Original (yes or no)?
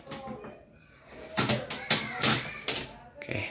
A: yes